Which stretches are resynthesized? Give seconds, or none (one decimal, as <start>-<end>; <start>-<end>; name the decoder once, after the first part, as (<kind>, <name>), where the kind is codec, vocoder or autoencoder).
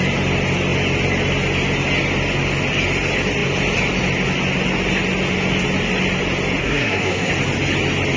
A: 6.6-7.3 (codec, SNAC)